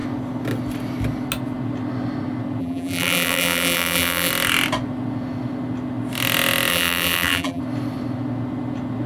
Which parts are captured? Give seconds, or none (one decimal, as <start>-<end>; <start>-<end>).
0.0-2.6; 4.3-6.7; 7.6-9.1